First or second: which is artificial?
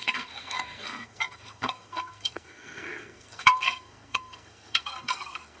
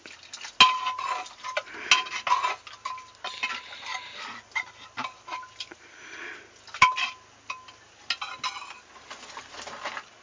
first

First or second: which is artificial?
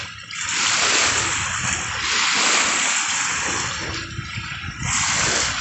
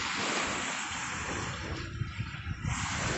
second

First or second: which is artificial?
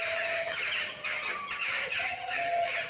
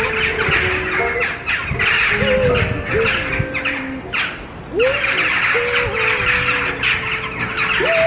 first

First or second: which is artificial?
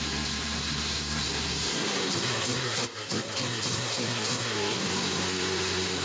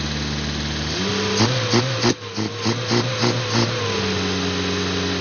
first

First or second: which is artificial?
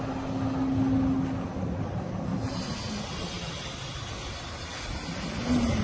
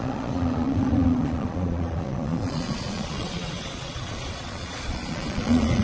second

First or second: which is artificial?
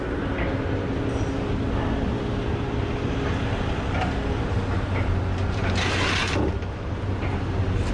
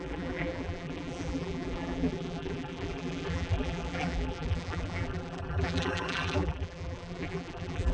second